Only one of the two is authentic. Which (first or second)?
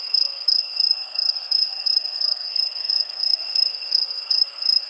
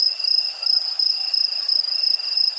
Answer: second